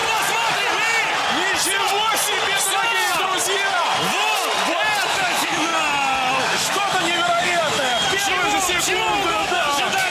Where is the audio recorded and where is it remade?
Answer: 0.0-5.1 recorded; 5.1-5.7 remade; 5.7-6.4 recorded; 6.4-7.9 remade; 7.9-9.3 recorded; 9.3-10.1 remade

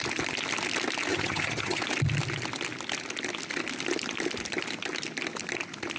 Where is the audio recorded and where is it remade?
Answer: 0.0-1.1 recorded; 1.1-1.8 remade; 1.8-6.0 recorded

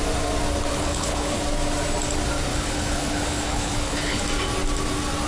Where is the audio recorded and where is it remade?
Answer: 0.0-0.7 recorded; 0.7-1.4 remade; 1.4-2.5 recorded; 2.5-4.2 remade; 4.2-5.3 recorded

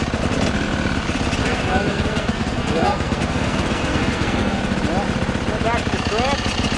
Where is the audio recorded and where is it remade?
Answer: 0.0-1.4 recorded; 1.4-4.6 remade; 4.6-6.8 recorded